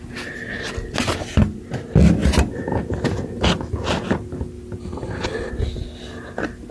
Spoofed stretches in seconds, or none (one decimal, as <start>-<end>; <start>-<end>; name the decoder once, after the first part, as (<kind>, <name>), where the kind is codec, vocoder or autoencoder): 4.8-5.5 (codec, HILCodec)